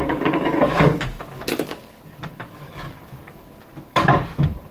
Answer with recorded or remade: remade